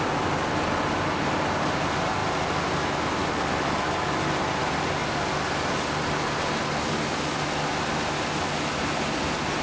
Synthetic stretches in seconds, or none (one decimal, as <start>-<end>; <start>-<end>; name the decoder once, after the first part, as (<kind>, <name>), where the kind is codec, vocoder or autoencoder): none